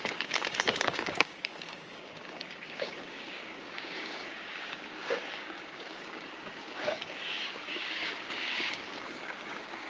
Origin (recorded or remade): remade